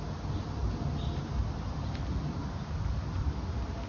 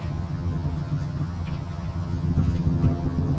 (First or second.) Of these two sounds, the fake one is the second